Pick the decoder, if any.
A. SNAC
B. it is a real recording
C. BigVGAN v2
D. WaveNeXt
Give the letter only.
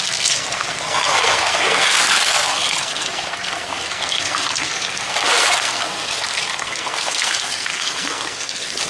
A